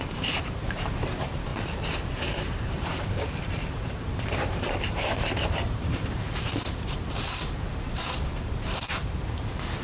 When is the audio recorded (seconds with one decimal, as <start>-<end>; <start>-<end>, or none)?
1.5-2.4